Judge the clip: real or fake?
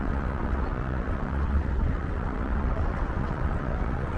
fake